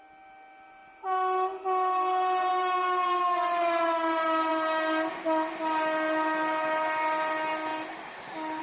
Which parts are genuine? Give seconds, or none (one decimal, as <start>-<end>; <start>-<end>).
0.0-8.6